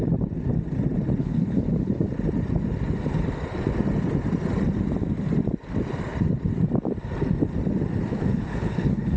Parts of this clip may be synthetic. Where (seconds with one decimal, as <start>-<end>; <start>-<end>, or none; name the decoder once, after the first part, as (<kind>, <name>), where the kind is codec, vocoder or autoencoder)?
1.2-2.1 (codec, HILCodec); 8.1-9.2